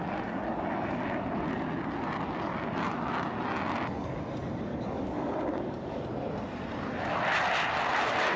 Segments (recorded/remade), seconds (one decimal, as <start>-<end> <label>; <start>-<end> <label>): 0.0-4.7 recorded; 4.7-6.0 remade; 6.0-8.4 recorded